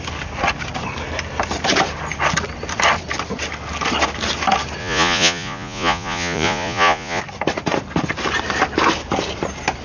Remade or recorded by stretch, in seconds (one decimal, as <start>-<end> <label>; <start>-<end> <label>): 0.0-4.8 recorded; 4.8-7.2 remade; 7.2-9.8 recorded